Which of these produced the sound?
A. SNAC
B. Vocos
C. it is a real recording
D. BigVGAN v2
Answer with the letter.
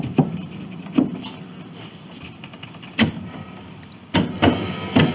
C